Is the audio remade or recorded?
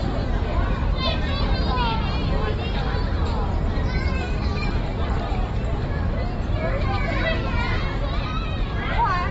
recorded